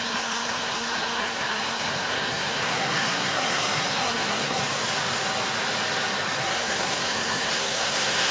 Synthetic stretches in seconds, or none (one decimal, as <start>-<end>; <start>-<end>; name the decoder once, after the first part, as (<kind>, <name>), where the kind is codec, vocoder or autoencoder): 0.0-4.6 (codec, SNAC); 6.4-8.3